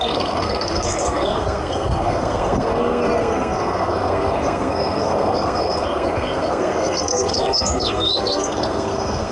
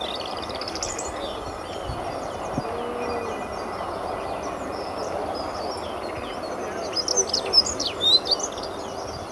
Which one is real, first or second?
second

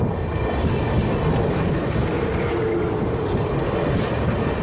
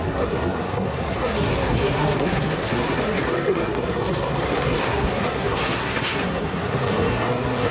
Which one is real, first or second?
first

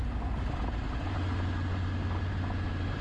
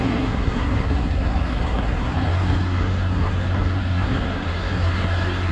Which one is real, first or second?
first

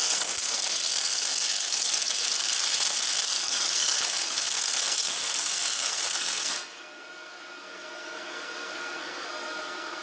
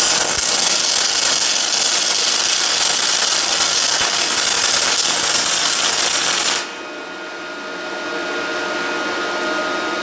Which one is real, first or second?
second